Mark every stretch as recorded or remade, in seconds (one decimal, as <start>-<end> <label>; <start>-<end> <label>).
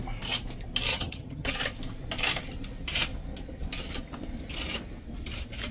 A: 0.0-0.9 recorded; 0.9-1.5 remade; 1.5-5.7 recorded